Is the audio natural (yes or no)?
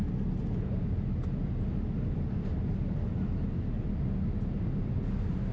yes